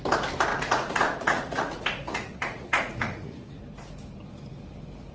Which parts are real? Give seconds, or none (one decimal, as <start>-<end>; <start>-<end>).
0.0-0.5; 3.6-5.1